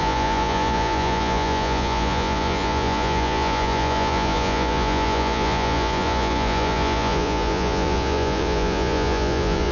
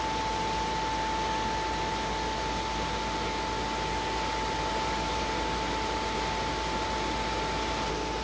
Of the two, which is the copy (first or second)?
first